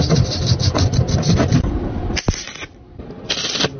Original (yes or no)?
no